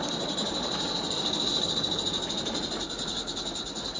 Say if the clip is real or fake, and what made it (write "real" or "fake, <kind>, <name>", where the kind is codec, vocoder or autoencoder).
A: real